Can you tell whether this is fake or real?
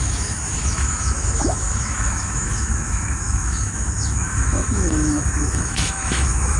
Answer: fake